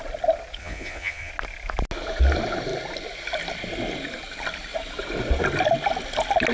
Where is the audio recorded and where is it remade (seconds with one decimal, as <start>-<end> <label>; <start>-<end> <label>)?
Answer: 0.0-0.6 recorded; 0.6-1.3 remade; 1.3-6.5 recorded